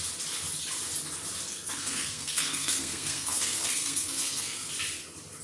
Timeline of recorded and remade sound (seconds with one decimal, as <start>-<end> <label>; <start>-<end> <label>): 0.0-1.5 recorded; 1.5-4.7 remade; 4.7-5.4 recorded